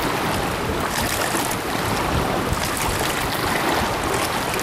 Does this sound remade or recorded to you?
recorded